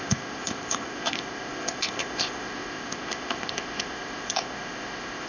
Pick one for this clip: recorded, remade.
remade